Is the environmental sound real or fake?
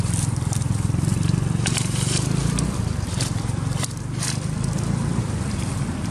real